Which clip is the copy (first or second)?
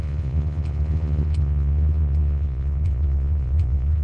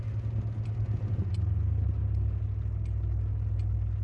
first